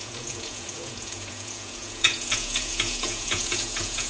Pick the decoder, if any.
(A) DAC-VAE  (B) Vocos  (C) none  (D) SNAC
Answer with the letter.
B